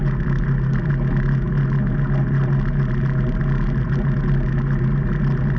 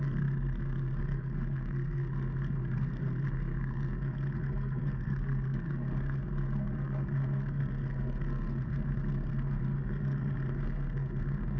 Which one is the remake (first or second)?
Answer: second